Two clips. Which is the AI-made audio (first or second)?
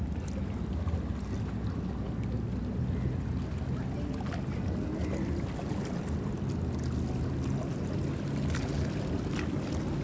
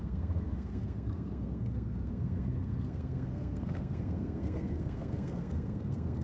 second